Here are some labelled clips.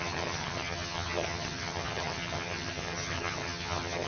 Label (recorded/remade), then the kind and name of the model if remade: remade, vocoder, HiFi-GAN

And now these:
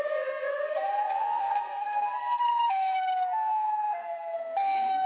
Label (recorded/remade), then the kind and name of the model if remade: remade, codec, SNAC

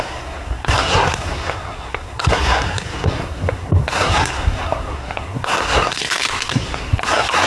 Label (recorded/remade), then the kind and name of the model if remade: remade, codec, SNAC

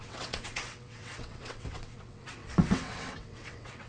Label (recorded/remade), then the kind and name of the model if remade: remade, vocoder, WaveNeXt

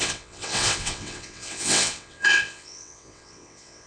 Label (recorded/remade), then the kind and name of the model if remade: remade, vocoder, WaveNeXt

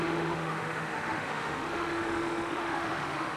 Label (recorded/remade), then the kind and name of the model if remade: remade, autoencoder, DAC-VAE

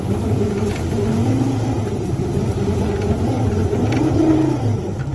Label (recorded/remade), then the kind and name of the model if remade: recorded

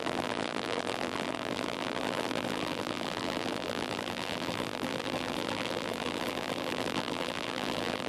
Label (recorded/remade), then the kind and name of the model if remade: remade, vocoder, BigVGAN v2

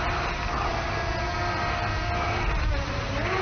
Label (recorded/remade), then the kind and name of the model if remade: recorded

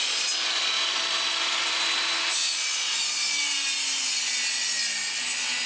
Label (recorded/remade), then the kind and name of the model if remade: recorded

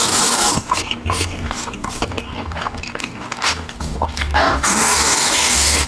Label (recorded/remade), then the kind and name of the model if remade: remade, codec, DAC